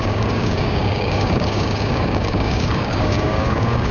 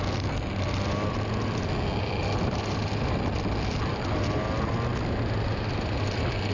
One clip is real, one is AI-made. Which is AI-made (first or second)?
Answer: first